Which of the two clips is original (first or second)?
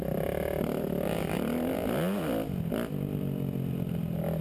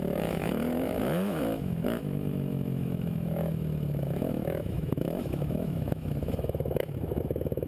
first